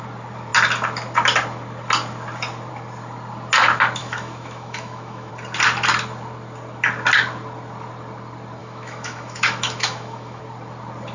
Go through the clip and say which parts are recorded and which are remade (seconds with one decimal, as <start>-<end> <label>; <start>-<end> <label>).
0.0-4.0 recorded; 4.0-5.3 remade; 5.3-8.6 recorded; 8.6-10.4 remade; 10.4-11.1 recorded